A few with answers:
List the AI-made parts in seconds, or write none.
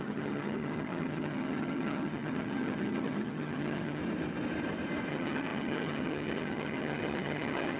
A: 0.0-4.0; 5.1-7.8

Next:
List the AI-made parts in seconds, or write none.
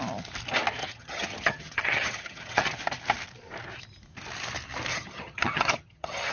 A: 0.8-2.8; 4.9-6.3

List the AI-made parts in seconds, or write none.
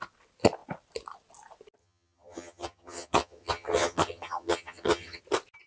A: 1.8-5.2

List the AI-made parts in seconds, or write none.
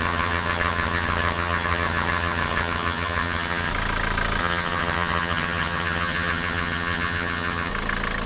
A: 0.0-3.7; 4.4-7.7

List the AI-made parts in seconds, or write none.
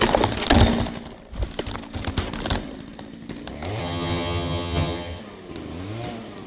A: 3.8-5.2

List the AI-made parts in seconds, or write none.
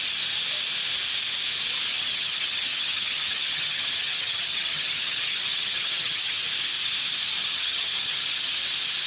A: 1.9-6.4; 7.4-8.5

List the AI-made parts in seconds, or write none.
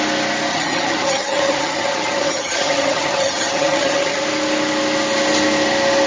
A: 0.5-4.2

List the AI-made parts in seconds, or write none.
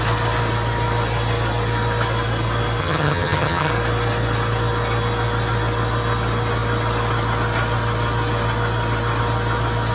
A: 2.8-3.7